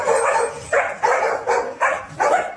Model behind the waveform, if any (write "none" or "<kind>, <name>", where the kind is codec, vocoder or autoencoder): none